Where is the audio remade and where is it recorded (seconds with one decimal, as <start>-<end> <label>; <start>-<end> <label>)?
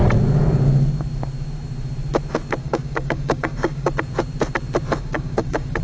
0.0-2.6 recorded; 2.6-3.9 remade; 3.9-5.0 recorded; 5.0-5.8 remade